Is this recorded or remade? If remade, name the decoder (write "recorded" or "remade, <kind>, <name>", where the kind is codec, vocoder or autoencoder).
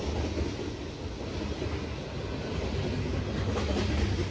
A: recorded